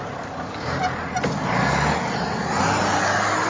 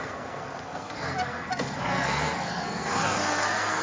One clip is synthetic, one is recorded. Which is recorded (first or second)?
first